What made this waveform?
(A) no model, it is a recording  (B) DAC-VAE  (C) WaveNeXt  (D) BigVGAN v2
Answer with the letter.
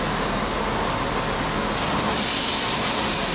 A